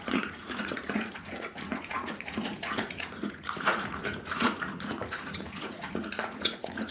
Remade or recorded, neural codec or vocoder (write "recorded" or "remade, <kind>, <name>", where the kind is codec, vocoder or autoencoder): remade, vocoder, Vocos